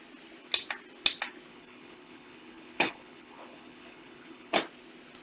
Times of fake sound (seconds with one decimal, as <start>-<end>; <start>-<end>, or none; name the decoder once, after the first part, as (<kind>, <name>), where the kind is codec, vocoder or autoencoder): 1.5-4.6 (codec, HILCodec)